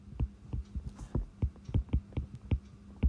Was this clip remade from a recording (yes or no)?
no